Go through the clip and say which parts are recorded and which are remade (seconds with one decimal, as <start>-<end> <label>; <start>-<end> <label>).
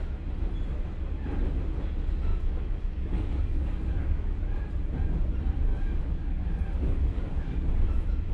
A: 0.0-2.3 recorded; 2.3-4.4 remade; 4.4-5.7 recorded; 5.7-7.7 remade; 7.7-8.3 recorded